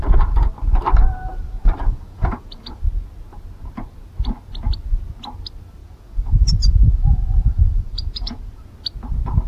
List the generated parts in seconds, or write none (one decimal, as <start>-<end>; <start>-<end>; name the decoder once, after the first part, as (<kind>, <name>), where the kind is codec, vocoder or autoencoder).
1.3-2.8 (vocoder, Vocos); 5.8-8.6